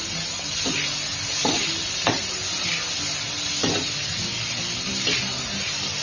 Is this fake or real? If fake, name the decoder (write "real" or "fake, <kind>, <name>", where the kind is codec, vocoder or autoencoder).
real